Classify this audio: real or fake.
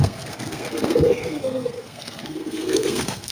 fake